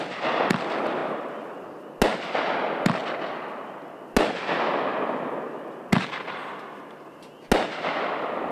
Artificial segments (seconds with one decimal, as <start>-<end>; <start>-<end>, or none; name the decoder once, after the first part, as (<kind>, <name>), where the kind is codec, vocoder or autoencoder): none